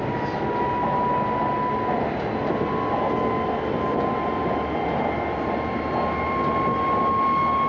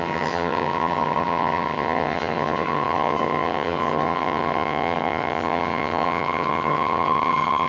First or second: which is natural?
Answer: first